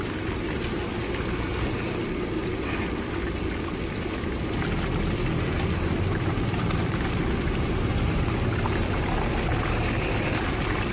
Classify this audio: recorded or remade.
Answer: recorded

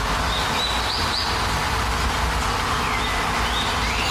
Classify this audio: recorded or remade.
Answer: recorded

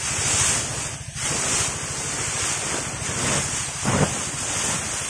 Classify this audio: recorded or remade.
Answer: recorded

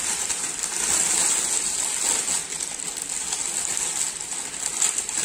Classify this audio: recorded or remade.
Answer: recorded